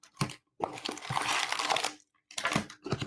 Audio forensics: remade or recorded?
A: recorded